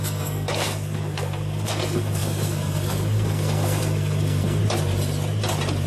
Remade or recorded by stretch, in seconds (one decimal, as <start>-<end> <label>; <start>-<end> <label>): 0.0-4.6 remade; 4.6-5.9 recorded